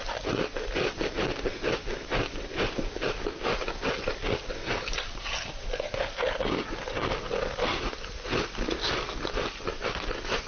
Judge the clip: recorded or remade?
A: recorded